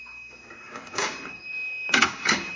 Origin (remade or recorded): remade